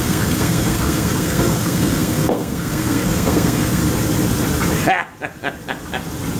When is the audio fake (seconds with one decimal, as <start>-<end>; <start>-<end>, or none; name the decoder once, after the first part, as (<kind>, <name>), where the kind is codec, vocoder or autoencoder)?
0.0-3.8 (codec, SNAC)